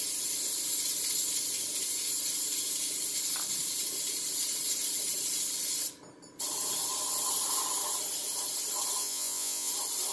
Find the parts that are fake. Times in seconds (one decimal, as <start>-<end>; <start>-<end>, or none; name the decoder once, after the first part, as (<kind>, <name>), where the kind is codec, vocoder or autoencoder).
9.0-9.7 (vocoder, Vocos)